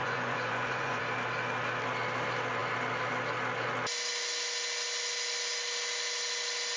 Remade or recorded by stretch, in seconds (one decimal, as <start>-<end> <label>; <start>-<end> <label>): 0.0-1.0 remade; 1.0-6.8 recorded